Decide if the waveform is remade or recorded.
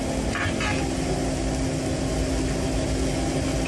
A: recorded